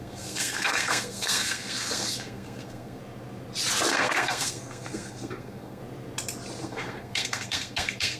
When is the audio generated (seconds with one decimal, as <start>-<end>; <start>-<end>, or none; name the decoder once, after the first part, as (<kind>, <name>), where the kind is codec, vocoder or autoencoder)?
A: 0.0-3.0 (codec, SNAC); 3.9-5.8; 6.6-8.2